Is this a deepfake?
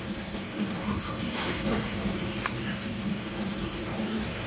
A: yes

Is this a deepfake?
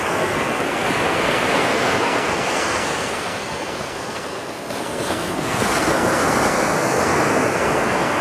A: yes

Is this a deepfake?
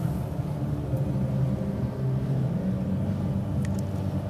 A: no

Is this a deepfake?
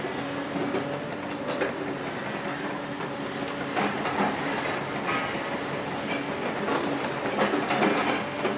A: no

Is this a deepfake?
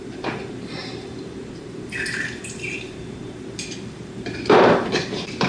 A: yes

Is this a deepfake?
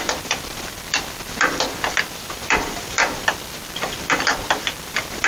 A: yes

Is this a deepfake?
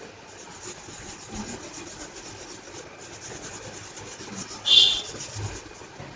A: no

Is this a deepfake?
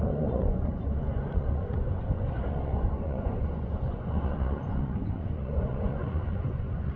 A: yes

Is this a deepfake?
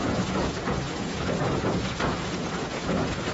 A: yes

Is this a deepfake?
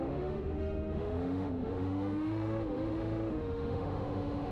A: yes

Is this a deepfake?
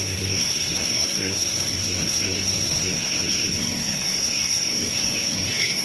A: yes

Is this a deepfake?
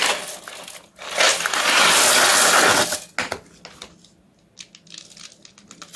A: no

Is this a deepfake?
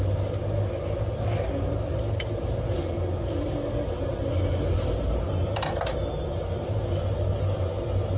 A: no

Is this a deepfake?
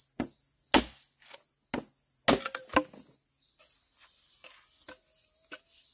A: no